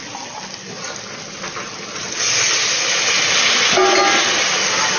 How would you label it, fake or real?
real